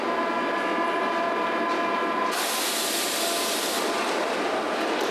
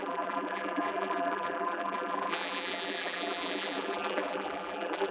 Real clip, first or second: first